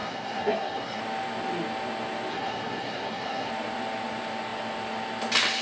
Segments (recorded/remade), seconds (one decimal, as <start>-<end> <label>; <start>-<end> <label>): 0.0-1.0 remade; 1.0-2.3 recorded; 2.3-3.5 remade; 3.5-5.6 recorded